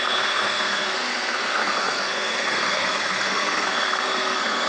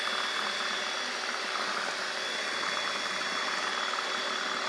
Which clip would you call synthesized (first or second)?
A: first